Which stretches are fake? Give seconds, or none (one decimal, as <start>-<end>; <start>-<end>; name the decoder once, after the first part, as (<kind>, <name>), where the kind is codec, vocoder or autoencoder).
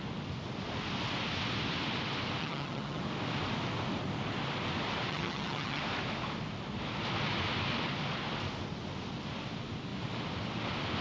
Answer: 2.4-3.0 (vocoder, HiFi-GAN); 5.1-5.8